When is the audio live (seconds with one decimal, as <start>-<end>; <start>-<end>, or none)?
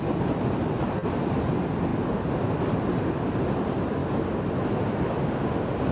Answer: 0.0-5.9